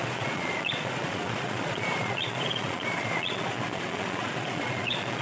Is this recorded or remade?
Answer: remade